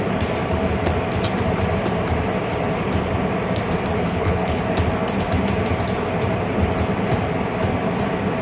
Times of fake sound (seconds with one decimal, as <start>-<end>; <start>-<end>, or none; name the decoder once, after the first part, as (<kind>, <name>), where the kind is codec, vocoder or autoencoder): 4.1-4.6 (codec, HILCodec)